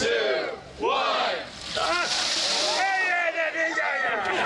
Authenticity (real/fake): real